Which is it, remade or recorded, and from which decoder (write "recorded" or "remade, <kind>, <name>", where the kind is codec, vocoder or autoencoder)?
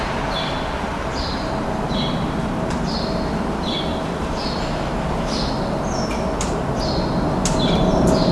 recorded